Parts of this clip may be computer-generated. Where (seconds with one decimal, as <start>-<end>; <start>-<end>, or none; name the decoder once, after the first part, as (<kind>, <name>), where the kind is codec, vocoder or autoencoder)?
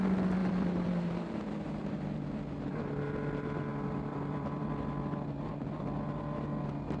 0.4-1.4 (vocoder, BigVGAN v2); 3.7-4.7